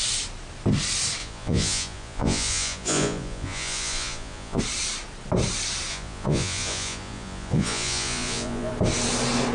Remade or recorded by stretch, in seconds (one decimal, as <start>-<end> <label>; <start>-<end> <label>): 0.0-1.2 recorded; 1.2-4.6 remade; 4.6-5.9 recorded; 5.9-8.7 remade; 8.7-9.5 recorded